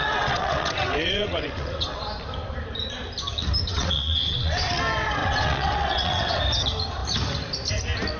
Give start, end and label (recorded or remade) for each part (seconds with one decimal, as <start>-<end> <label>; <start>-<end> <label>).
0.0-2.0 remade; 2.0-3.7 recorded; 3.7-4.8 remade; 4.8-5.2 recorded; 5.2-6.4 remade; 6.4-8.2 recorded